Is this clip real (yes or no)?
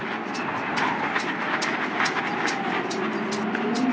yes